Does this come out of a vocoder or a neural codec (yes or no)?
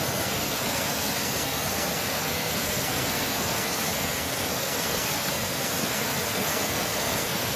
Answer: yes